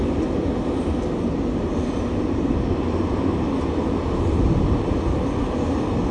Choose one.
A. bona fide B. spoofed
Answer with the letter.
A